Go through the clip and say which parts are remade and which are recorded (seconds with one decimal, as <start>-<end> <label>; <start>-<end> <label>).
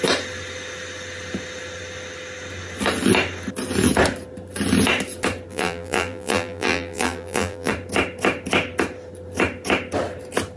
0.0-5.5 recorded; 5.5-7.7 remade; 7.7-10.6 recorded